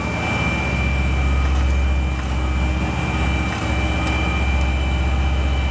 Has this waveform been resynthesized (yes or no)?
no